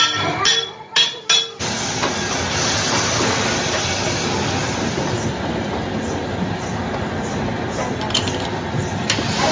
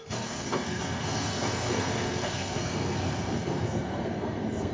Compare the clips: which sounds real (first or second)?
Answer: first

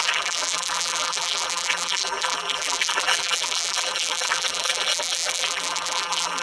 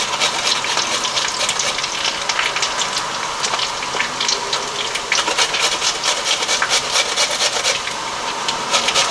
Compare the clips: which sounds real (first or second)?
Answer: second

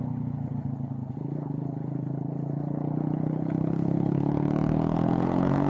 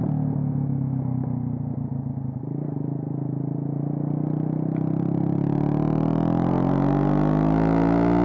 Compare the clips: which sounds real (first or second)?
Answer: second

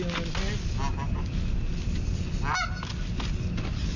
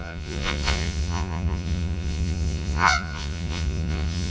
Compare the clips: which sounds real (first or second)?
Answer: first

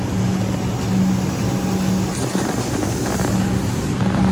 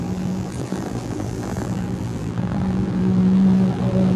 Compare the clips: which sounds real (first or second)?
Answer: first